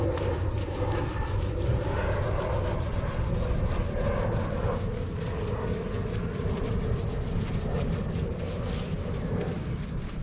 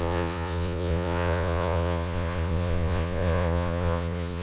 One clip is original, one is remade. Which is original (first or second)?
first